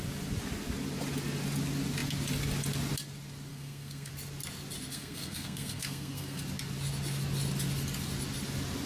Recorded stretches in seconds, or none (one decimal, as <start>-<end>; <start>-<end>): 0.0-3.5; 4.1-4.9; 6.4-8.9